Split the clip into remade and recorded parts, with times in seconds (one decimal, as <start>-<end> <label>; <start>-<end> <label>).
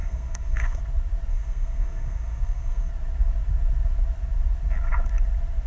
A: 0.0-0.8 remade; 0.8-1.3 recorded; 1.3-2.9 remade; 2.9-5.7 recorded